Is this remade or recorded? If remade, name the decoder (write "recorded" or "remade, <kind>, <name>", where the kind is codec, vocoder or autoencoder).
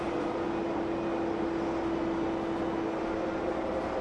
recorded